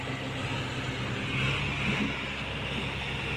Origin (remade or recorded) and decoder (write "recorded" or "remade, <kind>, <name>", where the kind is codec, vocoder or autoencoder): recorded